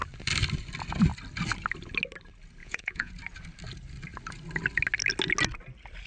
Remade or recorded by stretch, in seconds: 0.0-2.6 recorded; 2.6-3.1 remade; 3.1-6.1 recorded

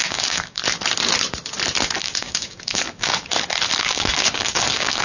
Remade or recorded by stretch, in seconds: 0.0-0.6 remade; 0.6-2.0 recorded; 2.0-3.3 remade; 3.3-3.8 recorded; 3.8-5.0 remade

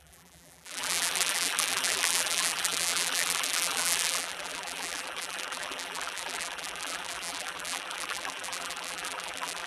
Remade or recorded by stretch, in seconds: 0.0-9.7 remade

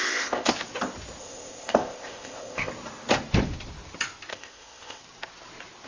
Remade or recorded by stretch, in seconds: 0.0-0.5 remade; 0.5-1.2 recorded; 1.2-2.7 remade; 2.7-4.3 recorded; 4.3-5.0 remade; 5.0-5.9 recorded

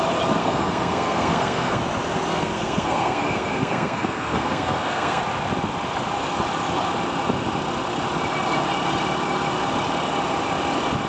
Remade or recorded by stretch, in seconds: 0.0-0.4 recorded; 0.4-1.8 remade; 1.8-2.3 recorded; 2.3-5.2 remade; 5.2-11.1 recorded

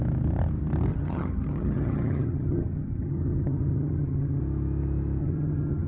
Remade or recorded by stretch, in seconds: 0.0-0.9 recorded; 0.9-4.4 remade; 4.4-5.2 recorded; 5.2-5.9 remade